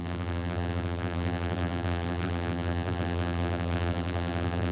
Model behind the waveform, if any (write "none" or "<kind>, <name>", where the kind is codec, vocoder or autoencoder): vocoder, BigVGAN v2